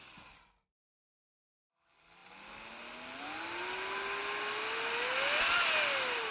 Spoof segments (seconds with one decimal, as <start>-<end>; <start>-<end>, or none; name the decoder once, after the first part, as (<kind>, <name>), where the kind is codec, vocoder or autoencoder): none